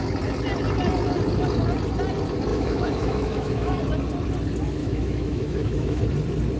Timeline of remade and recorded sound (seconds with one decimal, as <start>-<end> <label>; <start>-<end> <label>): 0.0-2.5 recorded; 2.5-3.8 remade; 3.8-4.8 recorded; 4.8-6.0 remade; 6.0-6.6 recorded